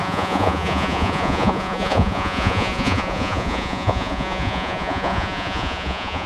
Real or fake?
fake